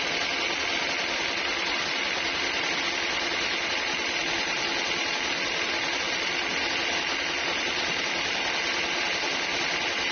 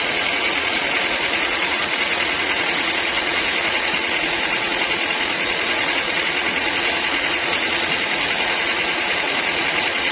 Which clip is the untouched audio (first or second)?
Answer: first